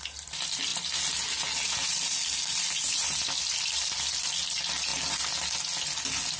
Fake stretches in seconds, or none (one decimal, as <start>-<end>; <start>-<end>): none